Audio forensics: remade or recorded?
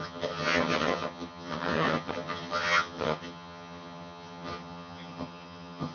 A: remade